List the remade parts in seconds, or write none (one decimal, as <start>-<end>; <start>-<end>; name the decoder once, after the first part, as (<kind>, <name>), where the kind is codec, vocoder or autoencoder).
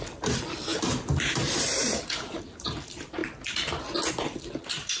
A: 0.0-3.2 (vocoder, BigVGAN v2); 4.1-5.0